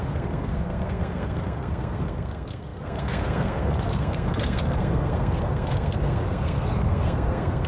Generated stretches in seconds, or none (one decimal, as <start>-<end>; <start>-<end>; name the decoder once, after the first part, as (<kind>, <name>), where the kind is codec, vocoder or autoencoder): 0.0-7.7 (codec, SNAC)